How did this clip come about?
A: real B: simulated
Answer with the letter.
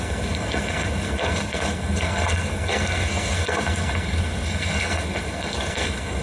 B